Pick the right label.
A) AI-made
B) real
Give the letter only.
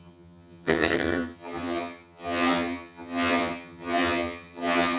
A